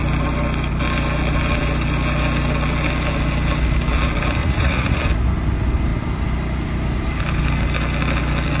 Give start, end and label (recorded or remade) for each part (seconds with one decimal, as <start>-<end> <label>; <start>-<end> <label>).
0.0-4.4 recorded; 4.4-5.0 remade; 5.0-8.6 recorded